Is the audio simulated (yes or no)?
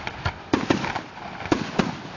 no